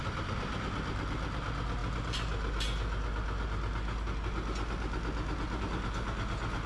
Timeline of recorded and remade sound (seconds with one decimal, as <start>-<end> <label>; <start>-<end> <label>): 0.0-6.7 recorded